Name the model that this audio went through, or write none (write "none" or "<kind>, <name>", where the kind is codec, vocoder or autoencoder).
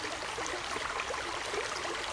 none